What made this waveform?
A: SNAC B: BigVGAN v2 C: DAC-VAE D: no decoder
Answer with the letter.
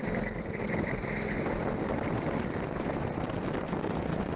D